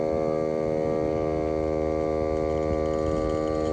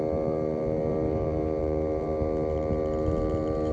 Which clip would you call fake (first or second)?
second